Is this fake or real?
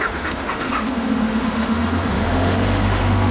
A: fake